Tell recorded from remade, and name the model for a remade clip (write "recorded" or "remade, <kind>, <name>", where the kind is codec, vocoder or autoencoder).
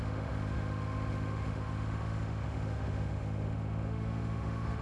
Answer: remade, autoencoder, DAC-VAE